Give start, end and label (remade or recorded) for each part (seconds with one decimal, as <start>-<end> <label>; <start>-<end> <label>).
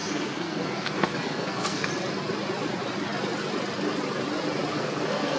0.0-1.9 remade; 1.9-4.7 recorded; 4.7-5.4 remade